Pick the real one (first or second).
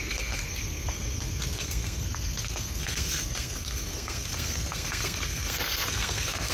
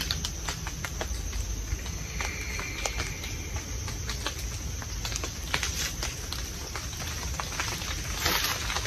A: second